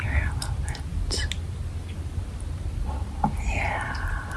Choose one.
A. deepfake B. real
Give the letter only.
B